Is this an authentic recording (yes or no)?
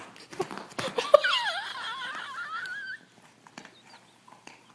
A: yes